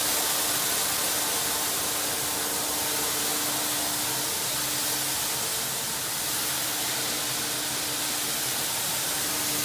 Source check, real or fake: real